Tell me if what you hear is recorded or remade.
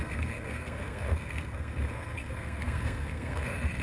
remade